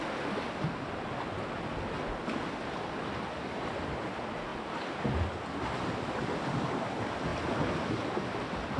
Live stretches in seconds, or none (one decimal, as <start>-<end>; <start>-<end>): 0.0-8.8